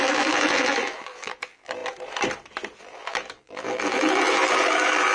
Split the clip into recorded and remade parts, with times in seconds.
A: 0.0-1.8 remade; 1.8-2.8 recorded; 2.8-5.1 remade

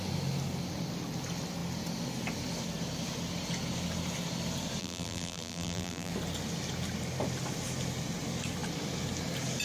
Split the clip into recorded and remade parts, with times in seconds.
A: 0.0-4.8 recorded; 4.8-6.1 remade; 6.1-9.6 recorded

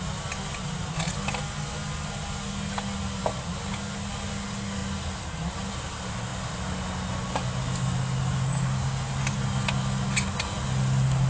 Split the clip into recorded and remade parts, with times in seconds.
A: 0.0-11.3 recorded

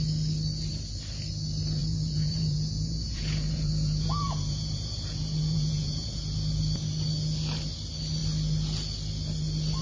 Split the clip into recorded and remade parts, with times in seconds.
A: 0.0-1.8 recorded; 1.8-6.2 remade; 6.2-9.8 recorded

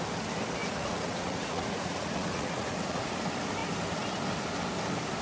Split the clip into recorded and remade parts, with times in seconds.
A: 0.0-0.6 recorded; 0.6-3.2 remade; 3.2-5.2 recorded